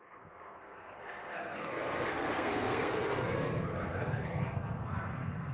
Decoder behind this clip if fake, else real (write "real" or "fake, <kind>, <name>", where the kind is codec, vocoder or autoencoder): fake, codec, SNAC